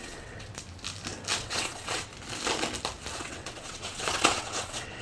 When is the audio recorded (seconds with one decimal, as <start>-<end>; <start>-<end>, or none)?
0.5-1.4; 2.1-3.1

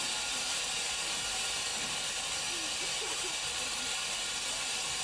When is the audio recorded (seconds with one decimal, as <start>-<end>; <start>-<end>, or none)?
0.0-1.7

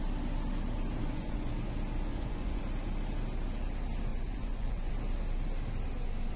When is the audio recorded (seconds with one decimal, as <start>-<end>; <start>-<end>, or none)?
0.0-1.0; 1.5-2.1; 2.6-4.1; 4.9-6.4

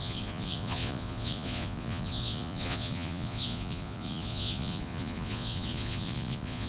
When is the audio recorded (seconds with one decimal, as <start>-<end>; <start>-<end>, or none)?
none

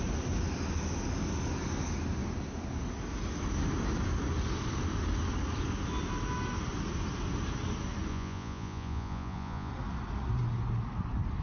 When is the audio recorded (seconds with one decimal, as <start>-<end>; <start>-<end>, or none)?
0.0-8.1; 9.7-11.4

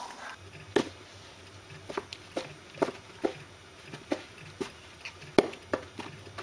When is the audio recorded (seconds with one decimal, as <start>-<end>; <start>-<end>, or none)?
0.0-6.4

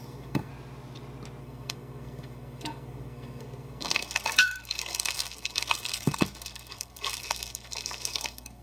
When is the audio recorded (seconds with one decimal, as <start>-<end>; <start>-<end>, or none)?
0.5-1.4